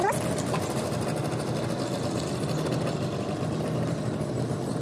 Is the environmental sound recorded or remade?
recorded